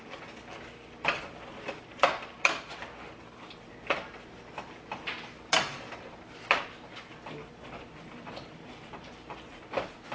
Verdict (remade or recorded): recorded